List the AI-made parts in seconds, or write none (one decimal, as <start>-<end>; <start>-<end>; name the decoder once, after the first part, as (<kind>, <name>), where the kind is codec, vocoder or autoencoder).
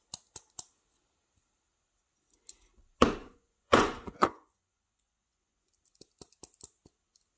3.2-5.7 (vocoder, Vocos)